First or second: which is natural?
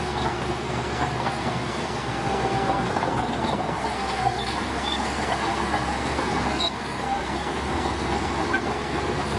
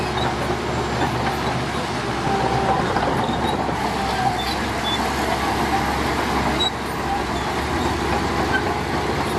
second